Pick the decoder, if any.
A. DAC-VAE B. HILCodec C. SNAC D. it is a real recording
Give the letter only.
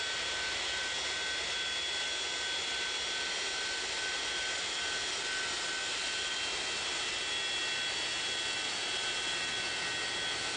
D